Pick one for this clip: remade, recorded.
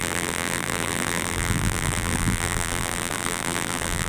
remade